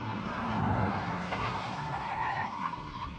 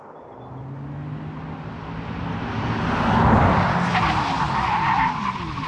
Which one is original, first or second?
second